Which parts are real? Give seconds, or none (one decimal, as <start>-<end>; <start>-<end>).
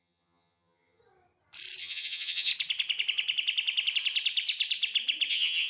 1.0-1.8; 2.5-5.3